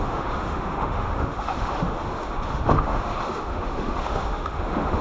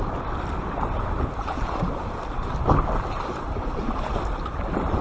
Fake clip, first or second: first